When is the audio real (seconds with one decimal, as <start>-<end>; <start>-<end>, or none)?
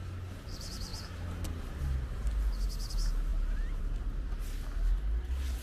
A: 0.0-5.6